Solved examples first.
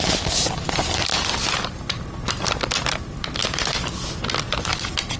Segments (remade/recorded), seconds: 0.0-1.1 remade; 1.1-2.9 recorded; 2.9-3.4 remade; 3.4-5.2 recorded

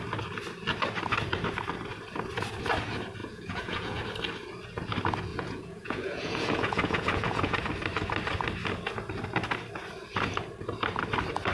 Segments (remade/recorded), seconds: 0.0-3.2 recorded; 3.2-4.0 remade; 4.0-5.3 recorded; 5.3-7.6 remade; 7.6-11.5 recorded

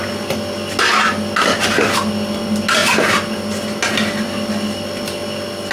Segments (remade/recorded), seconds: 0.0-5.7 recorded

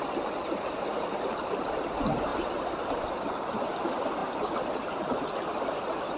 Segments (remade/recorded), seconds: 0.0-6.2 recorded

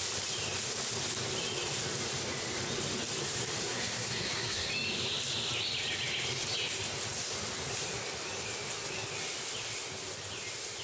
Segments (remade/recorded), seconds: 0.0-3.6 recorded; 3.6-4.7 remade; 4.7-10.8 recorded

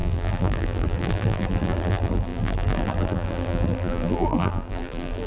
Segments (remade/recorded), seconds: 0.0-5.3 remade

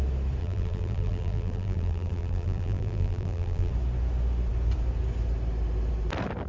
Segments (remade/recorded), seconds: 0.0-0.4 recorded; 0.4-3.7 remade; 3.7-6.5 recorded